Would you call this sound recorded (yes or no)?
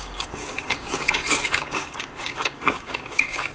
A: no